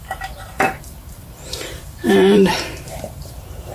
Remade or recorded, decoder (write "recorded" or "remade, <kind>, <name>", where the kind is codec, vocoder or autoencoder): remade, vocoder, BigVGAN v2